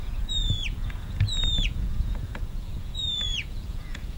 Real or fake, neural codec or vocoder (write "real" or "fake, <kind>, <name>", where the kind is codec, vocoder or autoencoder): fake, vocoder, Vocos